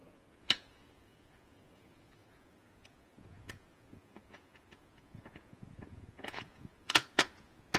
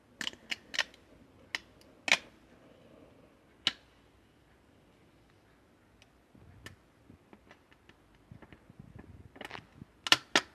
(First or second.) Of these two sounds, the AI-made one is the first